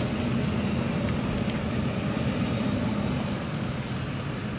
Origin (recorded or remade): recorded